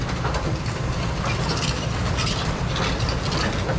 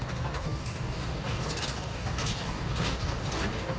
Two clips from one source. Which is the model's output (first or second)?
second